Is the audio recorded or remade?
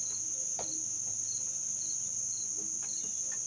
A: recorded